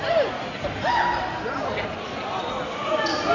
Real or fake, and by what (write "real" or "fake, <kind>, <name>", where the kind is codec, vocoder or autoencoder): real